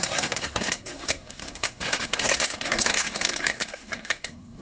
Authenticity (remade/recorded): remade